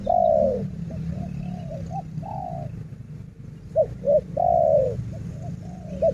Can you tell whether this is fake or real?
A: real